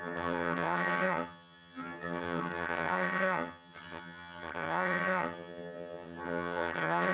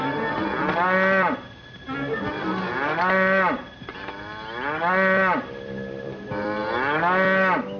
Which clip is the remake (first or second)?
first